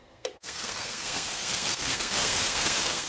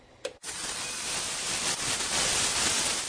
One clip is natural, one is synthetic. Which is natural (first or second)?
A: second